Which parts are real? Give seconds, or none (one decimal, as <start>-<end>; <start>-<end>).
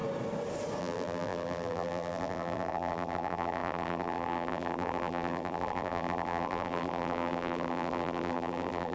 0.0-0.8